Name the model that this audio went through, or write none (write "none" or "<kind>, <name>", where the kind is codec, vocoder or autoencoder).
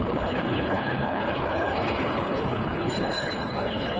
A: codec, HILCodec